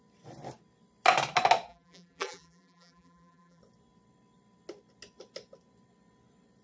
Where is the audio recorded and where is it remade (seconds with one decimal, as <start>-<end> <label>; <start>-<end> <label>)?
0.0-1.7 recorded; 1.7-3.6 remade; 3.6-6.6 recorded

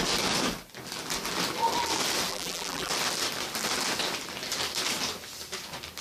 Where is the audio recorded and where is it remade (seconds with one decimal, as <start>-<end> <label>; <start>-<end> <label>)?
0.0-2.3 recorded; 2.3-2.9 remade; 2.9-6.0 recorded